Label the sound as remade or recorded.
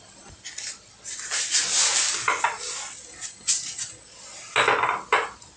recorded